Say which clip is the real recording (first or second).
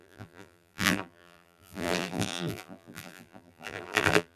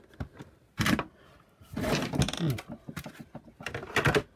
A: second